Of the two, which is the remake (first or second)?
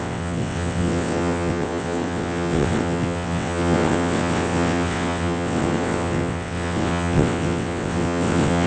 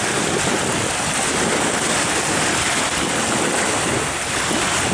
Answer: first